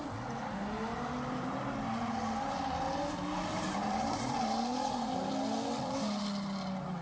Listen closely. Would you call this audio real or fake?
real